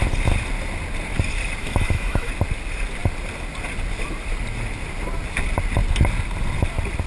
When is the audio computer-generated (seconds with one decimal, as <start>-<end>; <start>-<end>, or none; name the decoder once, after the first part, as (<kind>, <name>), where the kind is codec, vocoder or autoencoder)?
1.6-2.3 (autoencoder, DAC-VAE)